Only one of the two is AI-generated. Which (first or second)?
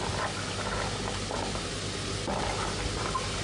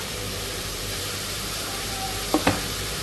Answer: second